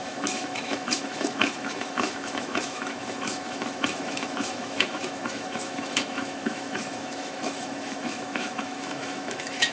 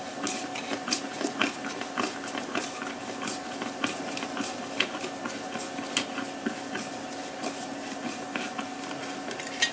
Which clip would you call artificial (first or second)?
first